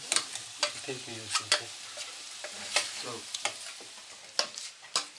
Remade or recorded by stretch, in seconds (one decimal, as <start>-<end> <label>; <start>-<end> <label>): 0.0-5.2 recorded